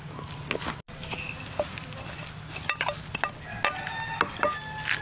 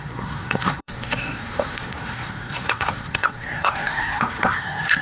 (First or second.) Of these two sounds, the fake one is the second